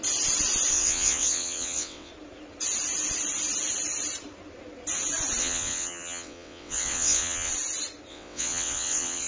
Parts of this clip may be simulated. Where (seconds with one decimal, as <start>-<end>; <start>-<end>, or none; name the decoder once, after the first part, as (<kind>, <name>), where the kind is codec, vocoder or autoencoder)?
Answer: 0.7-2.1 (vocoder, WaveNeXt); 5.4-7.5; 8.1-9.3